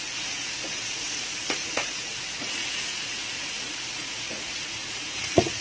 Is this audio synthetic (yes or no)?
yes